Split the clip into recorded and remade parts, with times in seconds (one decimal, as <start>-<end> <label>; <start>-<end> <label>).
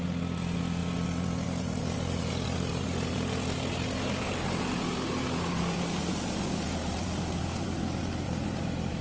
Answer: 0.0-9.0 recorded